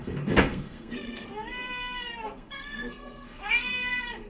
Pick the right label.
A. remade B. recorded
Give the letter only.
A